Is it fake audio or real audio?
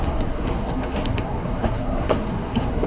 fake